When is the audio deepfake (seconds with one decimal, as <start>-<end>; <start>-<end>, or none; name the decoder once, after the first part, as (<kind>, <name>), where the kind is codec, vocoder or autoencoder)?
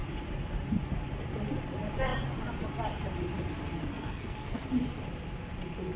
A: 3.8-4.6 (codec, SNAC)